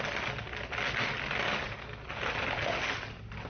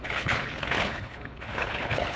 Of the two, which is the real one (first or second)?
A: first